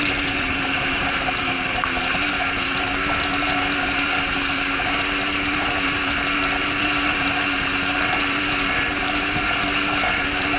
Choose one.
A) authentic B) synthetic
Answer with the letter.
B